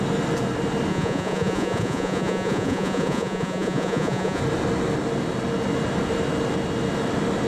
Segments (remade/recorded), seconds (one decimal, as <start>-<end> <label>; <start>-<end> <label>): 0.0-0.9 recorded; 0.9-4.4 remade; 4.4-7.5 recorded